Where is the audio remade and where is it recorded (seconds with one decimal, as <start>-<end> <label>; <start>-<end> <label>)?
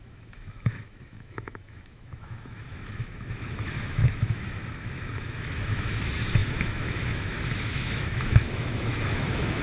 0.0-9.6 remade